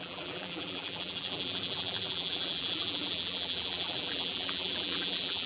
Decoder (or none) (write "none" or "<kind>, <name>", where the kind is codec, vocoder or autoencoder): vocoder, BigVGAN v2